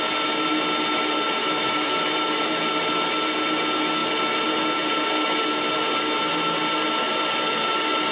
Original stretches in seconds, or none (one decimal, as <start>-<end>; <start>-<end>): 0.0-1.4; 2.5-8.1